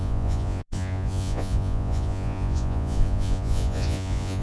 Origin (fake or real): fake